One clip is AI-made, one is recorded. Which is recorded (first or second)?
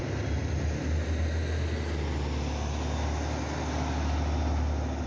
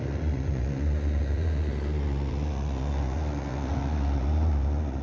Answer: first